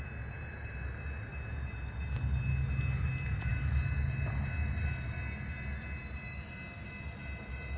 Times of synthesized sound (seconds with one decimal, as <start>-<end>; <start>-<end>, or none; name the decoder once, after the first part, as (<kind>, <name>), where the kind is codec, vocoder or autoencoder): none